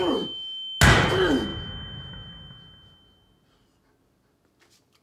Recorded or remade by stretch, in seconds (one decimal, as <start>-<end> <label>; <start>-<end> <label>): 0.0-5.0 recorded